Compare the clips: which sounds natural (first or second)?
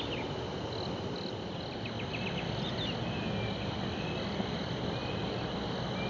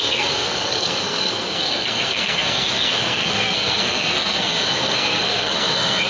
first